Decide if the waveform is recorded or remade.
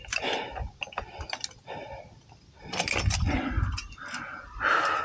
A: recorded